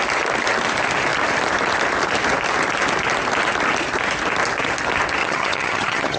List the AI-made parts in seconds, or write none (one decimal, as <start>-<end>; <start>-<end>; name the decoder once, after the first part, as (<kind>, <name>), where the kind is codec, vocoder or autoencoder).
5.2-6.2 (vocoder, HiFi-GAN)